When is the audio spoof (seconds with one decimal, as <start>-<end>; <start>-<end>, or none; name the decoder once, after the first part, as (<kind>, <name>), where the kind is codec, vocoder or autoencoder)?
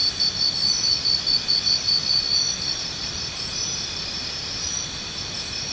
none